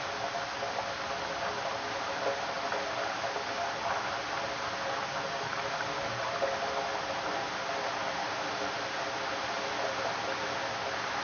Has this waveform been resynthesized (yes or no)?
no